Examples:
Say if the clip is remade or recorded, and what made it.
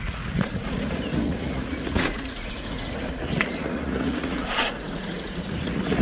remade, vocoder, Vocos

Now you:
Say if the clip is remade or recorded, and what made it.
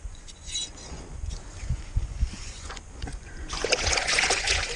remade, vocoder, Vocos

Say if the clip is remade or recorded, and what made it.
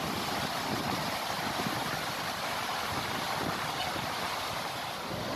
recorded